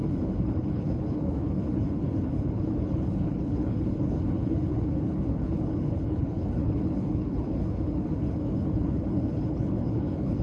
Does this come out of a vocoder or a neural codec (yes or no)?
yes